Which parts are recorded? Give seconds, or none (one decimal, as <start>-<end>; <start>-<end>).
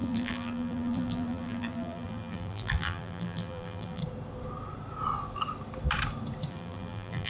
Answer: 4.0-6.5